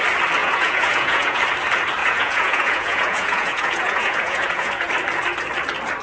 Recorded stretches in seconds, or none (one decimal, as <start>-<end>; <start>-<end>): 0.0-0.4; 1.4-2.0; 4.9-6.0